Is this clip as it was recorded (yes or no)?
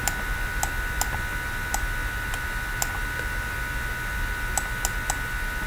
yes